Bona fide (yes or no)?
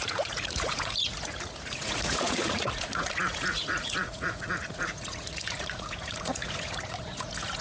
no